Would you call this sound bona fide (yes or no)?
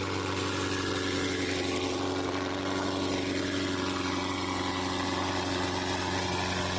yes